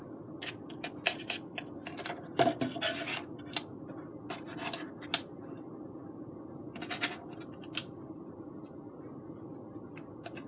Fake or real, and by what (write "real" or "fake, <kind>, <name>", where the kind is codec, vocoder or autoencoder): real